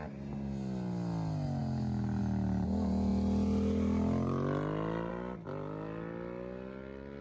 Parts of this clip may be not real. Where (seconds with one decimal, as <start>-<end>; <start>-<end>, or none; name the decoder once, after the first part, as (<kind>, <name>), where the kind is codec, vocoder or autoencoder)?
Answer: none